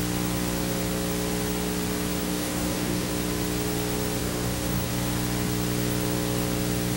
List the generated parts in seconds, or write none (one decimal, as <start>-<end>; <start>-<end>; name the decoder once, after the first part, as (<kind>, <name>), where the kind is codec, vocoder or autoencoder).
2.2-3.1 (codec, DAC); 4.2-4.9

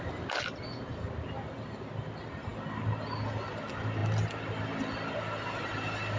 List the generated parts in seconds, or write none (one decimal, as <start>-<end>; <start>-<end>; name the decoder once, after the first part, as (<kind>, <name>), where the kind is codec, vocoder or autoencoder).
none

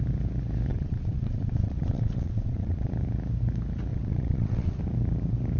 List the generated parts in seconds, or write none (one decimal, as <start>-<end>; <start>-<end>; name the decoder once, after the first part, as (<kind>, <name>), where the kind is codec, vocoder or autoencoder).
0.7-2.9 (vocoder, WaveNeXt); 3.9-4.8

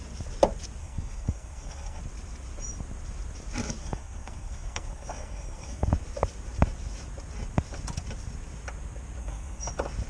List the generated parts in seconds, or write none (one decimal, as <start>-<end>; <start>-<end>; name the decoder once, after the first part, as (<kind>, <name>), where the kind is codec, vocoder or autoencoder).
0.8-2.0 (codec, SNAC); 3.8-5.9; 9.2-9.7

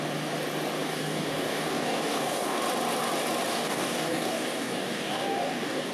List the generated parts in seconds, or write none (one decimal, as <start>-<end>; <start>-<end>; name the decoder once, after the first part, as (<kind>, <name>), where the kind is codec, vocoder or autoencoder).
0.9-2.6 (codec, DAC); 3.5-5.9

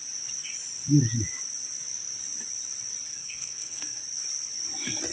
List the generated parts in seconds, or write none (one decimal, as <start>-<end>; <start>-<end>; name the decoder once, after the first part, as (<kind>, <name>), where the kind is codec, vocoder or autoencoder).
3.1-4.0 (codec, SNAC)

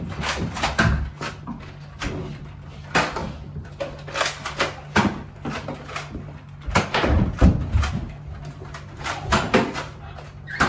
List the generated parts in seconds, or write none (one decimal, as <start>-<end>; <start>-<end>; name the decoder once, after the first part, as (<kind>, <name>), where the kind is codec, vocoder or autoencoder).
none